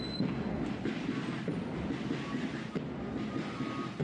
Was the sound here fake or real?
real